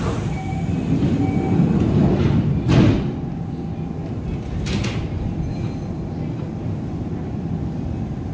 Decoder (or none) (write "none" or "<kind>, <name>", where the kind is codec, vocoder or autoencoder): none